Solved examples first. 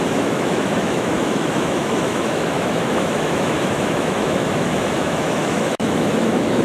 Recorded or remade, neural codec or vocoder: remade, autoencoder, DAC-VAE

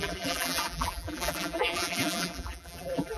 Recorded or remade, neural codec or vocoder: remade, vocoder, BigVGAN v2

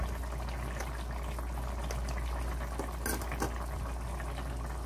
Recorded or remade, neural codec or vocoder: recorded